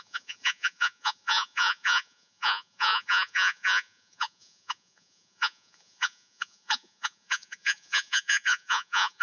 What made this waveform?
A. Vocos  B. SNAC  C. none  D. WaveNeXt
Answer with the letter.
A